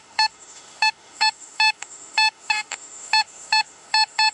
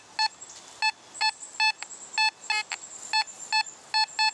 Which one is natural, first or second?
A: second